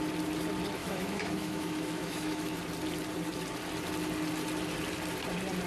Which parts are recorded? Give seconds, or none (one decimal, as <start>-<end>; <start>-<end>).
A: 0.0-0.8; 2.6-5.7